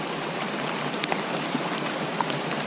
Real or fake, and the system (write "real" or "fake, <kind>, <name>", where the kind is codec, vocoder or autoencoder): real